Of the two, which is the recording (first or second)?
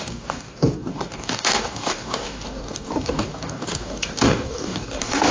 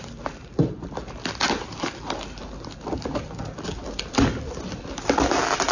second